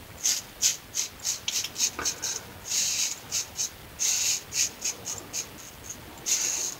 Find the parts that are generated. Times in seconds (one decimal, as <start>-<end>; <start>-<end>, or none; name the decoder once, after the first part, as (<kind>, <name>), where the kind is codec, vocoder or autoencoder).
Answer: none